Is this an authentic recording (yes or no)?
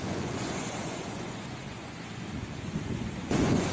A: no